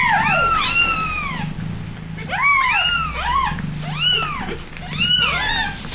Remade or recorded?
recorded